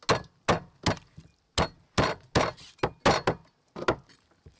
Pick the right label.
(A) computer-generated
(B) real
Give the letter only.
B